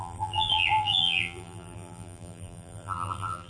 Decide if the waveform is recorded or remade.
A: remade